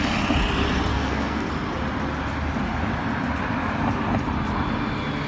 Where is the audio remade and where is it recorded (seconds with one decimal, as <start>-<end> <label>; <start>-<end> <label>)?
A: 0.0-0.9 recorded; 0.9-1.5 remade; 1.5-5.3 recorded